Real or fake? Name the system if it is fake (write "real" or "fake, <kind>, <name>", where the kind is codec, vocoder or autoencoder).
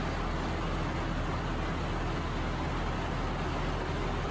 real